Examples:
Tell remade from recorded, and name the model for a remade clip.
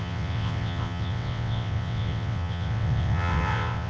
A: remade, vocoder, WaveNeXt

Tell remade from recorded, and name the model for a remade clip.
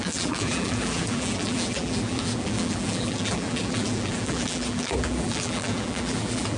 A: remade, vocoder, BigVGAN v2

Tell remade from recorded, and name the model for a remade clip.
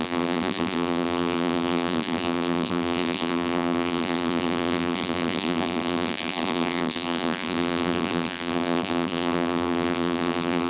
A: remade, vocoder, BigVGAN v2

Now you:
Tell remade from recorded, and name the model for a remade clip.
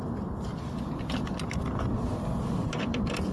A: recorded